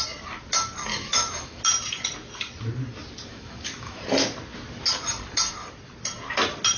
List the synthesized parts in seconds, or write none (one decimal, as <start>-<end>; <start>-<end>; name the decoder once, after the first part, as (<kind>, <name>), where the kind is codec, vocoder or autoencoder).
0.9-1.6 (autoencoder, DAC-VAE); 3.3-4.0